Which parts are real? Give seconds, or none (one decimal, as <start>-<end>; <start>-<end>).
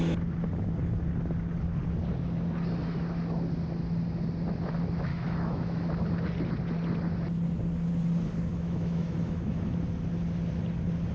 0.0-5.1; 5.9-8.5; 9.7-11.1